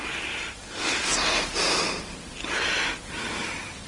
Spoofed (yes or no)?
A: no